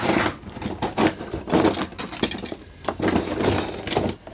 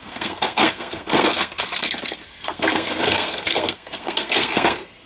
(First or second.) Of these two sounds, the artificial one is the second